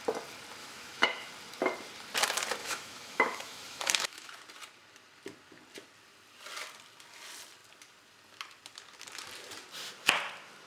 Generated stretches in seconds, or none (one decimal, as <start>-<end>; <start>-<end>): 0.6-1.3; 2.6-4.3

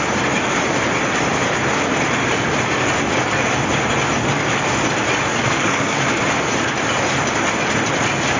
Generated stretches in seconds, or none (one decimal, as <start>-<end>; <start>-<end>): 5.3-6.0